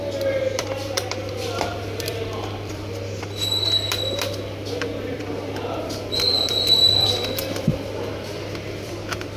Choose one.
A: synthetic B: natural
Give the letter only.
A